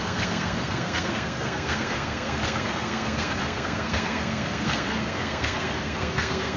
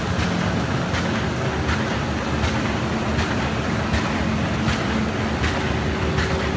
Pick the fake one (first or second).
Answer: first